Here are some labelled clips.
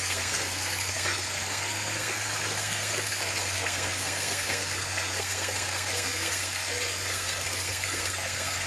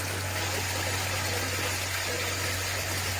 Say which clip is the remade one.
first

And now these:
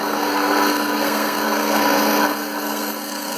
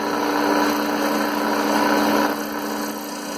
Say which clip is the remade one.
first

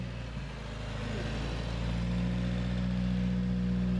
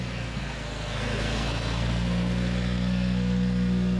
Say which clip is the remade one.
second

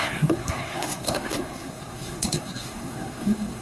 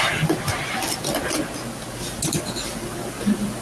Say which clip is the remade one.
first